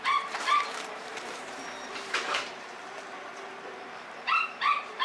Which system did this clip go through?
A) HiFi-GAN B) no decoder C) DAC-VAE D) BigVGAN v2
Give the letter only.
D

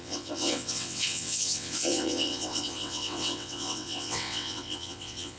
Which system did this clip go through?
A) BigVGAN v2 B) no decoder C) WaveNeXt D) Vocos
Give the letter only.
C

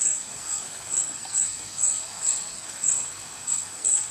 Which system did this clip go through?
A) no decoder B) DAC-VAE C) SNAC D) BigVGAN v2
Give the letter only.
C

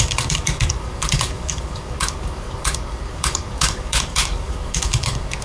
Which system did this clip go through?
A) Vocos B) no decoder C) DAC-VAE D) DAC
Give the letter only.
D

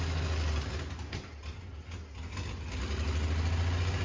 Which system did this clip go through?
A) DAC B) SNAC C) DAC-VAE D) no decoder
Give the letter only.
D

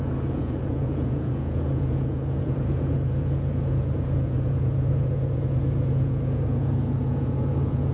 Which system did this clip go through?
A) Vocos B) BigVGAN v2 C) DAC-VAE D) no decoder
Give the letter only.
A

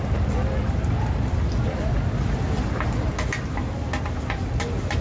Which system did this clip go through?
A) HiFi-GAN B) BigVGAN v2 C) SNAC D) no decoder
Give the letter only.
D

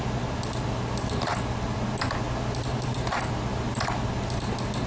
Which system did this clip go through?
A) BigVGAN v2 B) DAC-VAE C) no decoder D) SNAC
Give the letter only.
C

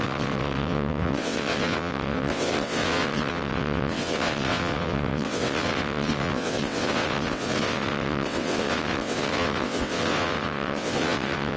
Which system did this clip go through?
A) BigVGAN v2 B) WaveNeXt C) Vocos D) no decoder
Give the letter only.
B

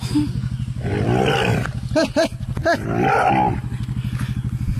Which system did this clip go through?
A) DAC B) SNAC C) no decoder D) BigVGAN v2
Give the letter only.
C